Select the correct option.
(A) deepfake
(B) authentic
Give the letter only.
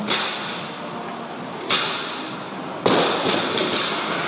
B